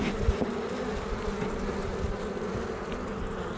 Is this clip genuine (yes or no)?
yes